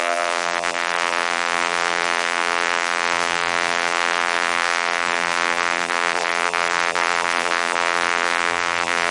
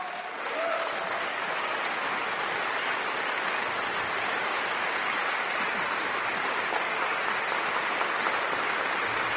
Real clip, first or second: second